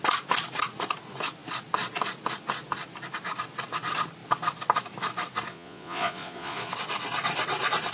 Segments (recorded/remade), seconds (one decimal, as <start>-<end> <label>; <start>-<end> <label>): 0.0-5.5 recorded; 5.5-6.7 remade; 6.7-7.9 recorded